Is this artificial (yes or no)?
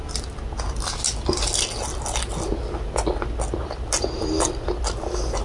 no